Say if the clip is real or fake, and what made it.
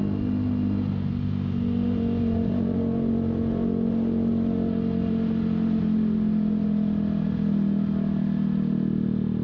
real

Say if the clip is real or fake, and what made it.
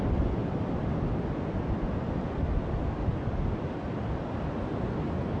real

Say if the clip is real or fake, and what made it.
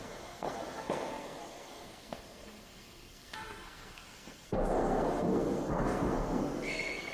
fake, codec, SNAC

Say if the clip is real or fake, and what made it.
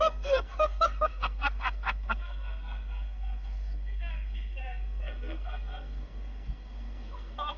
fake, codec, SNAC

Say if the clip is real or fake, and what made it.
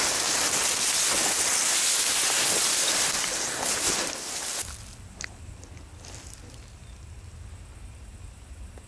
real